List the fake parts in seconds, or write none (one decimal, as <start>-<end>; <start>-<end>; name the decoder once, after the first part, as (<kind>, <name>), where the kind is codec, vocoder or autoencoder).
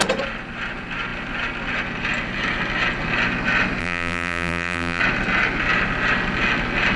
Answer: 3.8-5.0 (vocoder, BigVGAN v2)